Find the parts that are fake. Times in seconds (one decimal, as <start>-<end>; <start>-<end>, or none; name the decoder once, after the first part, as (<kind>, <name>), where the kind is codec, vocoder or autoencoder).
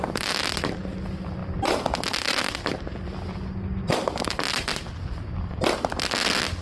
none